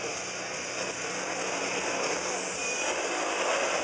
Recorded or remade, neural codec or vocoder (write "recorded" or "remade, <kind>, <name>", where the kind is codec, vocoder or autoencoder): recorded